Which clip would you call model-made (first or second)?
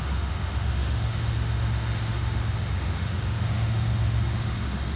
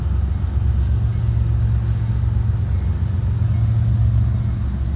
first